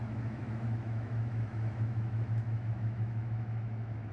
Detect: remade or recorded remade